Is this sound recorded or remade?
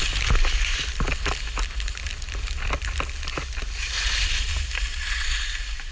recorded